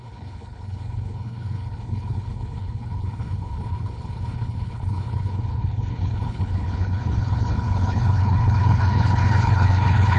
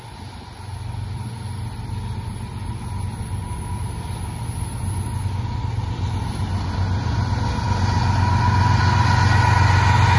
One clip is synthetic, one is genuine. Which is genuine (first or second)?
second